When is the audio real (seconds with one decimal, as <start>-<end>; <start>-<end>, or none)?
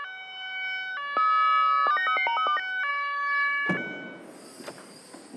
0.0-2.9; 3.7-5.4